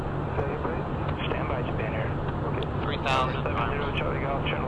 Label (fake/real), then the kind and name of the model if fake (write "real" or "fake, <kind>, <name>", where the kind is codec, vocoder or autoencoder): real